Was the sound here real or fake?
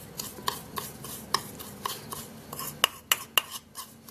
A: real